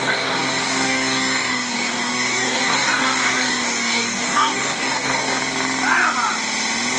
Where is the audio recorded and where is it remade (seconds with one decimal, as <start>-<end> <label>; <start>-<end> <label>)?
0.0-5.4 remade; 5.4-7.0 recorded